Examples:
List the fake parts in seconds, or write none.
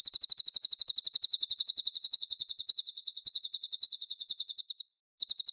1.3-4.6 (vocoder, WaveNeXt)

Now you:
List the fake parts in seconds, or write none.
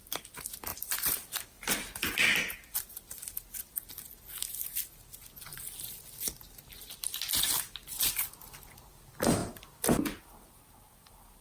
0.7-1.7 (vocoder, BigVGAN v2)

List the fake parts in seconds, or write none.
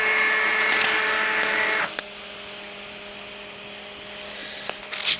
none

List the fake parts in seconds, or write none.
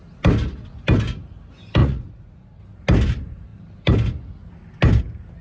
1.8-2.6 (vocoder, Vocos)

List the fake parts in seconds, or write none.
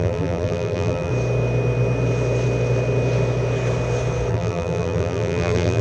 0.0-1.1 (vocoder, BigVGAN v2); 4.3-5.8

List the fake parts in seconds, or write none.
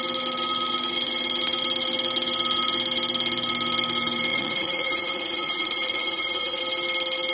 4.3-6.6 (vocoder, Vocos)